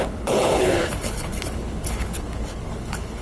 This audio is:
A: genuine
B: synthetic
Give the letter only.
B